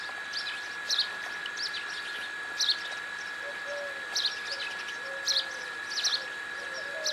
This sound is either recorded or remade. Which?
recorded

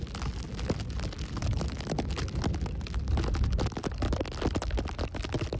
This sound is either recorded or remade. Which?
recorded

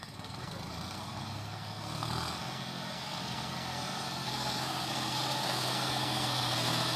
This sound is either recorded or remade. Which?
remade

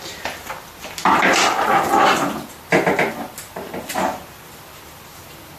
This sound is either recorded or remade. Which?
recorded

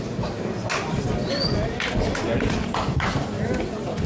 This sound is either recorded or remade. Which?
recorded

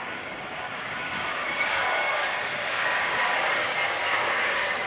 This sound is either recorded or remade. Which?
remade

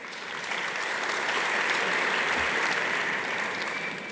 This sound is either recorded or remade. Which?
recorded